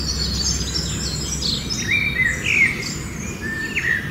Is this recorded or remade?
recorded